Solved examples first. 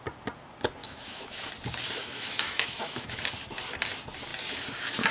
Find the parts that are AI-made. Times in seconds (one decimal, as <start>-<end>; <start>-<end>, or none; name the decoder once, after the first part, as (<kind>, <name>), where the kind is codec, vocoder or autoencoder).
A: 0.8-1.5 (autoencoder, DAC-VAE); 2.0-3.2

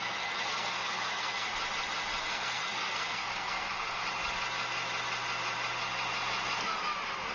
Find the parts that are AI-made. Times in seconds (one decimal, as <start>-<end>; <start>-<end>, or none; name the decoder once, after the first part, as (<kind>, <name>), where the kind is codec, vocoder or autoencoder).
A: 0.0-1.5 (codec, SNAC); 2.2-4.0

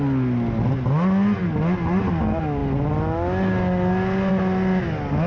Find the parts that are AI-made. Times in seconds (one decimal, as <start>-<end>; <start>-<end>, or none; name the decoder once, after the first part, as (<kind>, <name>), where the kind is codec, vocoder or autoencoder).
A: none

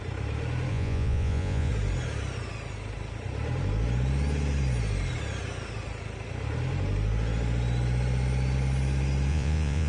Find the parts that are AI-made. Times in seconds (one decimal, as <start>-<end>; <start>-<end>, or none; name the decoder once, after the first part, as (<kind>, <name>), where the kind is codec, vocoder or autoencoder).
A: 0.7-1.7 (vocoder, Vocos); 9.3-9.9

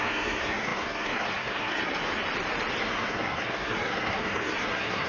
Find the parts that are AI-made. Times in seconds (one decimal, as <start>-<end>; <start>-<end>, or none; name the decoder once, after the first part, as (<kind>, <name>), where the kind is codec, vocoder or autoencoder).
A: 0.0-2.0 (codec, SNAC); 2.8-5.1

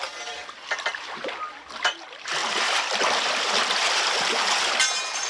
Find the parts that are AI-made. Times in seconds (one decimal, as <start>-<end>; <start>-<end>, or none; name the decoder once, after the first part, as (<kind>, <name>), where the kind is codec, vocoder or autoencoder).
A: 2.4-3.0 (vocoder, BigVGAN v2)

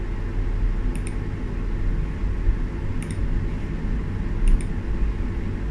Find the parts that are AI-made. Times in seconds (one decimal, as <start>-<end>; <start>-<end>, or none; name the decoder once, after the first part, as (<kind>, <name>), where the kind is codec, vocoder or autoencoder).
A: none

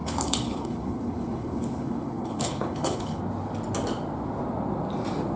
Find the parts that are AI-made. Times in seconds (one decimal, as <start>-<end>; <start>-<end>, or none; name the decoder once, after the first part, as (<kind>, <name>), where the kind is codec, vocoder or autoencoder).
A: 0.0-3.2 (codec, HILCodec)